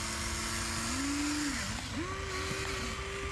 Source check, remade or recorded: recorded